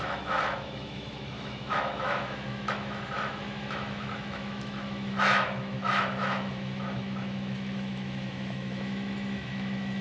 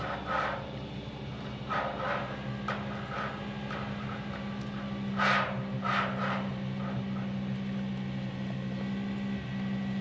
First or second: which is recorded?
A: second